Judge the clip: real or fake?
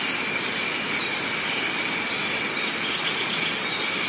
real